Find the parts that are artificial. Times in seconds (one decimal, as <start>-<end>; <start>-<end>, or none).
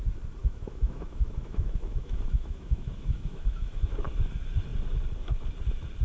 0.4-4.0